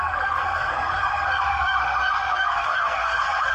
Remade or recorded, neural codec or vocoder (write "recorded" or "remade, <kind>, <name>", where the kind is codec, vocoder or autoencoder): remade, codec, SNAC